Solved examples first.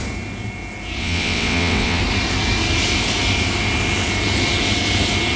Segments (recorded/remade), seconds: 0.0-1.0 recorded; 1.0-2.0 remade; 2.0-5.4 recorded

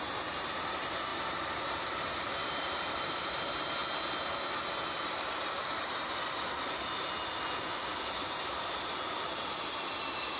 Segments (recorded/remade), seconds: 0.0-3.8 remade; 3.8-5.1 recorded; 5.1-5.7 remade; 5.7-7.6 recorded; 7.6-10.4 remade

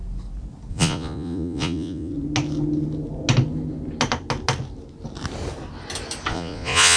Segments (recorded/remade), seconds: 0.0-0.7 recorded; 0.7-2.1 remade; 2.1-6.3 recorded; 6.3-7.0 remade

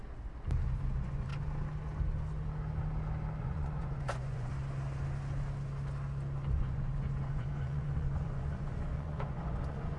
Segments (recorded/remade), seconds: 0.0-0.9 recorded; 0.9-1.3 remade; 1.3-3.4 recorded; 3.4-4.5 remade; 4.5-6.5 recorded; 6.5-10.0 remade